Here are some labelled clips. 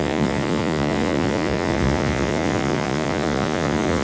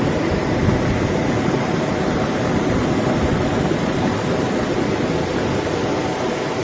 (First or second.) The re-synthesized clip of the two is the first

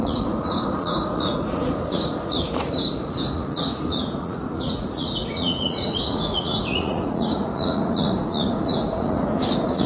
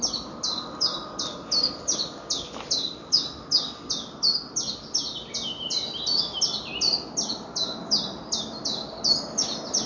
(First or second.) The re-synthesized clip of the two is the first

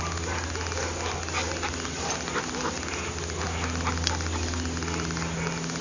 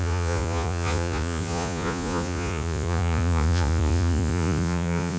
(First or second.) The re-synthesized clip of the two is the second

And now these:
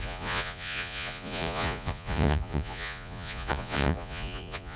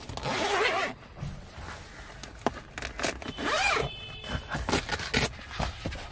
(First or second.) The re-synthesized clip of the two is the first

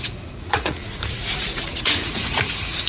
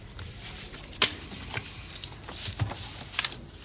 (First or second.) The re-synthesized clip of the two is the first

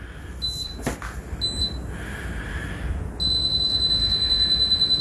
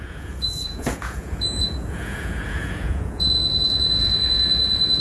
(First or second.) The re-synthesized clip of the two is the second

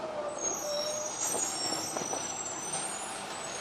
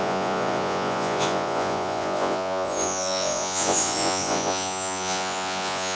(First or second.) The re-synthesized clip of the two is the second